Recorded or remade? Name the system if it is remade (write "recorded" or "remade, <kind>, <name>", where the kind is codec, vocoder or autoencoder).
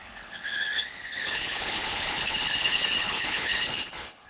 remade, codec, HILCodec